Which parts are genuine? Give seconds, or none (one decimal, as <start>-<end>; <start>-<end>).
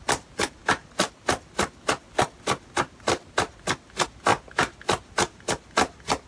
0.0-6.3